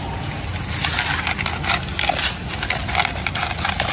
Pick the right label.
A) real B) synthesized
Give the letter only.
A